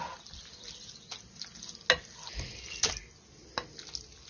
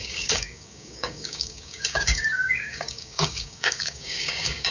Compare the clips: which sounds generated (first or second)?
second